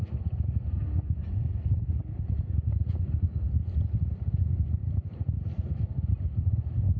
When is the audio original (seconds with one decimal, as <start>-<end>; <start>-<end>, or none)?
0.0-7.0